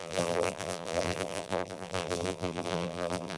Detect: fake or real fake